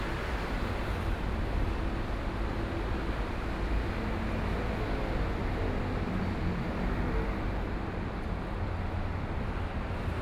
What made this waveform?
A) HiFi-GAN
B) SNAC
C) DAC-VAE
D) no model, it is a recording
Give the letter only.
D